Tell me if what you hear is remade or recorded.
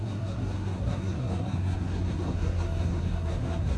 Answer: remade